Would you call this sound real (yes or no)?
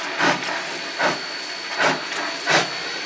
yes